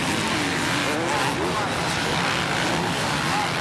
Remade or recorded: recorded